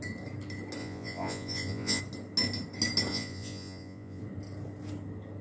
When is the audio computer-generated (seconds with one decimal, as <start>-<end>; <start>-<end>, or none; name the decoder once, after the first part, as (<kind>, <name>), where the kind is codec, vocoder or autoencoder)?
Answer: 0.8-2.0 (vocoder, Vocos); 3.1-4.2